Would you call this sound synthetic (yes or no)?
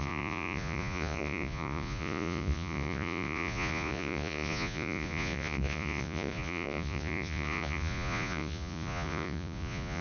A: yes